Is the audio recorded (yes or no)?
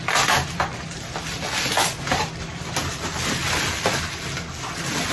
yes